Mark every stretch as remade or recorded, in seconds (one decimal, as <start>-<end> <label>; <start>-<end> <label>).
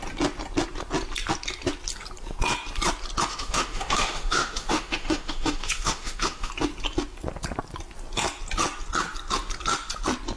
0.0-3.3 recorded; 3.3-6.5 remade; 6.5-10.4 recorded